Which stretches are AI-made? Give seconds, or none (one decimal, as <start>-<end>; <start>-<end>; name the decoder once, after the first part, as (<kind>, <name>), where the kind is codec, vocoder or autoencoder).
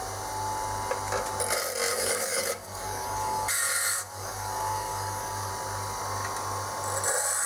1.9-5.5 (codec, DAC)